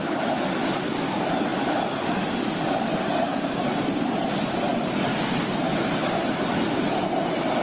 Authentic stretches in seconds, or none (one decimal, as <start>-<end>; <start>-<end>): 0.0-7.6